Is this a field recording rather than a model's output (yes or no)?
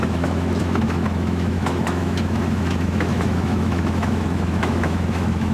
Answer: no